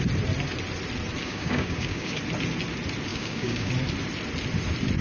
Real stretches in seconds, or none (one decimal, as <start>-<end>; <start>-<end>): 0.0-1.2; 2.2-3.1; 3.7-5.0